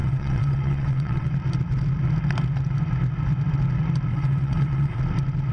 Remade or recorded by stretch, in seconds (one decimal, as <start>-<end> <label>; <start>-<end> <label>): 0.0-1.3 remade; 1.3-4.1 recorded; 4.1-5.0 remade; 5.0-5.5 recorded